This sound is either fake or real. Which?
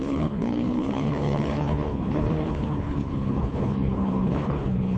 fake